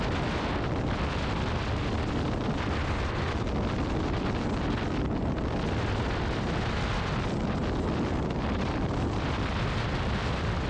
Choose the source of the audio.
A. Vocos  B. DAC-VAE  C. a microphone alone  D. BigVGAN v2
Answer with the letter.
C